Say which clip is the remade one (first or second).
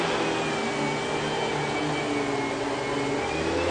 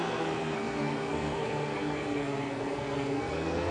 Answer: second